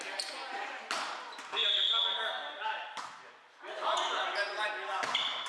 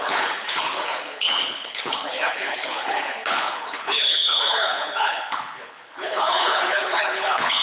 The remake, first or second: second